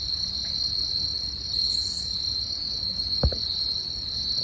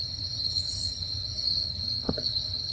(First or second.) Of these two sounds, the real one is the first